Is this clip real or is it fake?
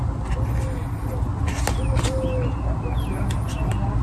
real